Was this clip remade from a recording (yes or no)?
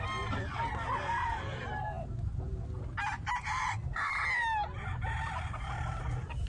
no